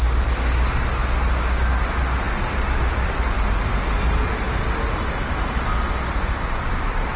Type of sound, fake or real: real